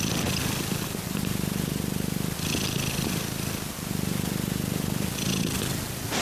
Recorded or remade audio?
recorded